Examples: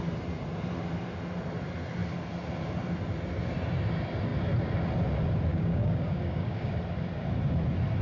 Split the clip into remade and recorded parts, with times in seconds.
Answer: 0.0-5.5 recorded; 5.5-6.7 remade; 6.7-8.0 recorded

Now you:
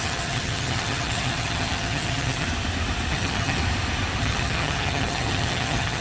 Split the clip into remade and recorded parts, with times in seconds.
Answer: 0.0-2.5 remade; 2.5-3.1 recorded; 3.1-3.6 remade; 3.6-4.2 recorded; 4.2-6.0 remade

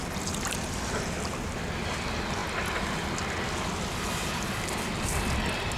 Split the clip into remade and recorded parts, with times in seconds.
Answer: 0.0-5.8 recorded

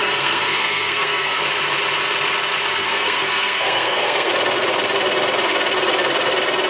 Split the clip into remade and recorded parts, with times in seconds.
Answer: 0.0-1.4 remade; 1.4-2.8 recorded; 2.8-4.3 remade; 4.3-6.7 recorded

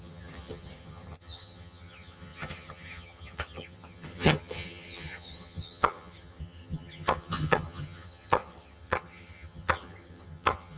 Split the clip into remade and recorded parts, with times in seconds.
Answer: 0.0-10.8 remade

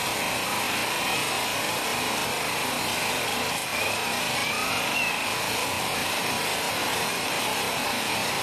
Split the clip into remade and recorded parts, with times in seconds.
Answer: 0.0-6.8 recorded; 6.8-7.3 remade; 7.3-8.4 recorded

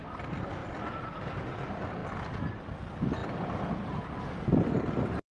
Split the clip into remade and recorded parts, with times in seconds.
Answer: 0.0-0.6 recorded; 0.6-1.4 remade; 1.4-3.2 recorded; 3.2-4.1 remade; 4.1-5.3 recorded